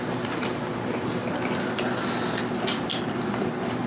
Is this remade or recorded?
recorded